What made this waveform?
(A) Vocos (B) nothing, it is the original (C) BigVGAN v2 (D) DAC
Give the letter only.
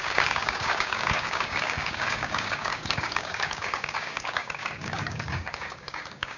D